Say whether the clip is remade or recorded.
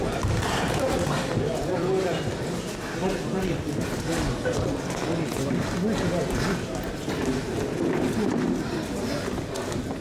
recorded